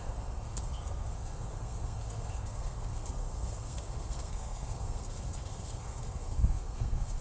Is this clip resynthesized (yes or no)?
yes